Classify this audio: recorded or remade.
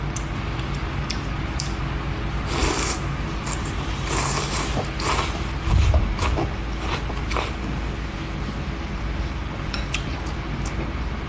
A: recorded